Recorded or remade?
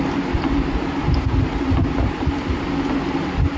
recorded